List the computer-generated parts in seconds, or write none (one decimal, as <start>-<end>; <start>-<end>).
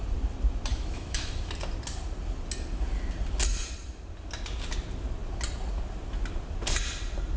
0.7-1.5